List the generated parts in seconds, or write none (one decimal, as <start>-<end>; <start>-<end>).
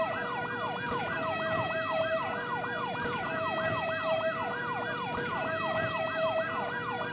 none